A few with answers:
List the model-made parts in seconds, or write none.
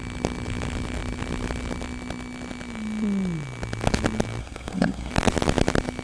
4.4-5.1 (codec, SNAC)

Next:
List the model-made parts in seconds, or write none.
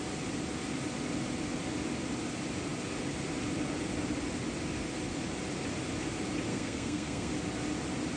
6.5-7.3 (codec, SNAC)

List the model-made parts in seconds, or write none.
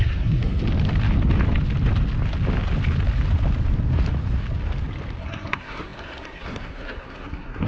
0.0-0.6 (codec, SNAC); 5.2-7.7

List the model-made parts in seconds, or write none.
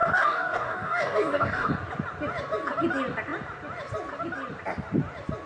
0.0-1.7 (codec, DAC)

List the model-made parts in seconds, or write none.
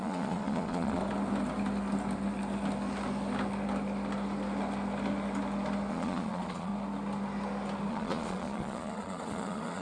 0.0-1.0 (vocoder, Vocos); 5.9-6.7; 7.9-9.8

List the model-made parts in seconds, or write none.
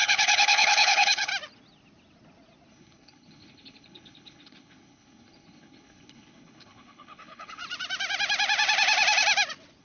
0.0-1.3 (codec, HILCodec); 2.7-7.6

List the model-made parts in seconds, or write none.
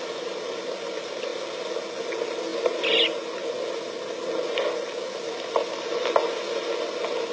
none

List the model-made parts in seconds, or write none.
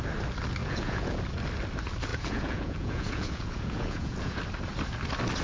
0.6-1.2 (vocoder, Vocos); 2.1-4.4